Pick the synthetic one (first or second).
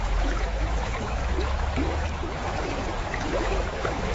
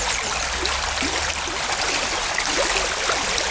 first